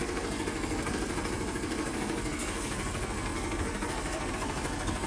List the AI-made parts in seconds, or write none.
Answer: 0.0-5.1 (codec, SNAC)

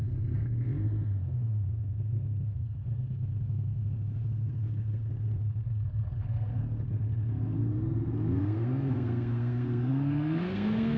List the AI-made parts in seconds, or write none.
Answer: 0.0-11.0 (codec, SNAC)

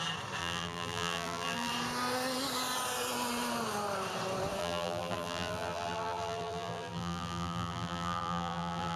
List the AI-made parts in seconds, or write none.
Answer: 0.4-1.7 (vocoder, BigVGAN v2); 4.6-9.0

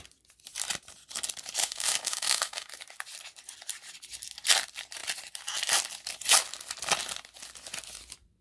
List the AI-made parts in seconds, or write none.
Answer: 1.6-2.7 (autoencoder, DAC-VAE)

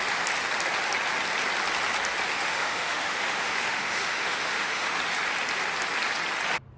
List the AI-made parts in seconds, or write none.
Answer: 2.3-5.0 (autoencoder, DAC-VAE)

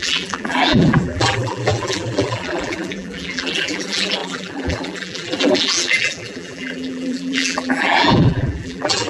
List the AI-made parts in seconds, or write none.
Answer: 0.0-9.1 (vocoder, BigVGAN v2)